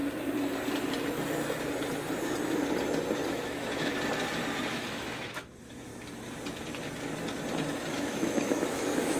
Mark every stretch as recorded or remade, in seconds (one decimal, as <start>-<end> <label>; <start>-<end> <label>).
0.0-3.3 recorded; 3.3-3.9 remade; 3.9-4.7 recorded; 4.7-5.9 remade; 5.9-7.9 recorded; 7.9-9.2 remade